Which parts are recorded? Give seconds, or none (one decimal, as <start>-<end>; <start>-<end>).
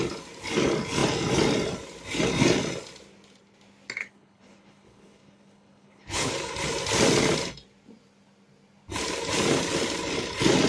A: 0.0-4.0; 6.3-10.7